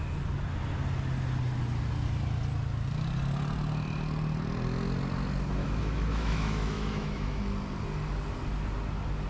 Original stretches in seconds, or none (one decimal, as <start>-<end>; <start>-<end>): 0.0-5.6; 7.4-9.3